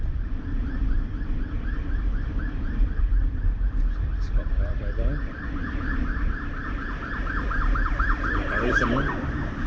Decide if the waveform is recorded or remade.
remade